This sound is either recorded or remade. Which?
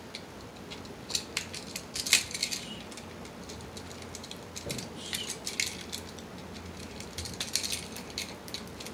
recorded